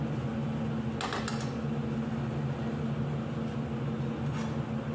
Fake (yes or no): no